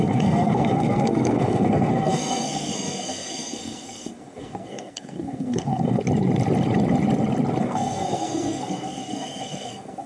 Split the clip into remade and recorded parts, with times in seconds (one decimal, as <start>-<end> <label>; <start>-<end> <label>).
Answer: 0.0-6.0 remade; 6.0-7.6 recorded; 7.6-10.1 remade